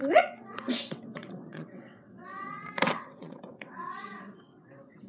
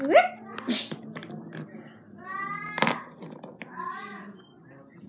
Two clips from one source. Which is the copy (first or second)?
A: first